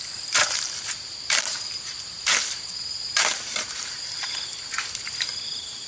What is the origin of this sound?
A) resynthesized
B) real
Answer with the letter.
A